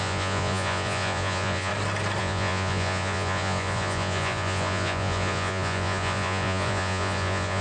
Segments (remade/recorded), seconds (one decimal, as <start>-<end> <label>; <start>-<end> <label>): 0.0-1.7 remade; 1.7-2.2 recorded; 2.2-7.6 remade